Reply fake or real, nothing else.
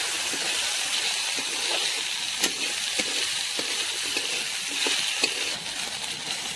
real